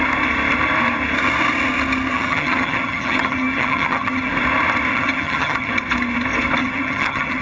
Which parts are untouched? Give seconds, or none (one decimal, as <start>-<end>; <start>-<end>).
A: 0.0-2.1; 4.3-4.9; 5.7-6.6